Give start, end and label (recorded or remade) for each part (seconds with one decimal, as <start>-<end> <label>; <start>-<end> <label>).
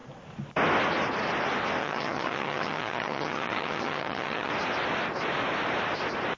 0.0-1.8 recorded; 1.8-4.5 remade; 4.5-6.4 recorded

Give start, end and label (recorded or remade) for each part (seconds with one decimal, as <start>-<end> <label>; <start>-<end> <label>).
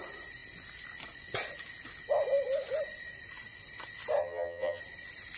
0.0-4.2 recorded; 4.2-4.8 remade; 4.8-5.4 recorded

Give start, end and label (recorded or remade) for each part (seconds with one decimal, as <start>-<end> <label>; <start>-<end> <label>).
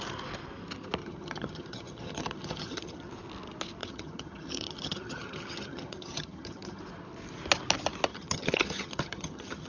0.0-1.0 recorded; 1.0-3.1 remade; 3.1-3.8 recorded; 3.8-6.8 remade; 6.8-8.1 recorded; 8.1-9.7 remade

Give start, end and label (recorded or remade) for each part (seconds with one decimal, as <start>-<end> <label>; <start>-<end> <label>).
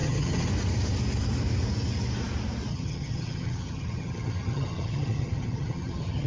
0.0-0.5 remade; 0.5-2.7 recorded; 2.7-6.3 remade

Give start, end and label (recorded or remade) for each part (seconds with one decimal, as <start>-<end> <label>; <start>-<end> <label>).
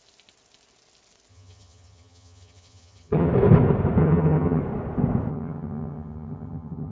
0.0-1.3 recorded; 1.3-3.3 remade; 3.3-4.0 recorded; 4.0-4.6 remade; 4.6-5.3 recorded; 5.3-6.9 remade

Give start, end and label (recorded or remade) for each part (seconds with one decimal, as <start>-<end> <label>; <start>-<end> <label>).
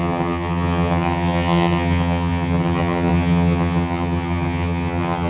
0.0-5.3 remade